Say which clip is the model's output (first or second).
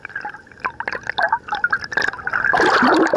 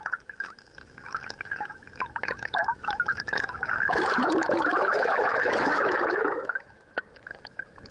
second